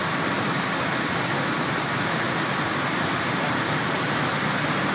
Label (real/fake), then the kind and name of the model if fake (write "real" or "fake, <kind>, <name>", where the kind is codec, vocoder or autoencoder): fake, vocoder, BigVGAN v2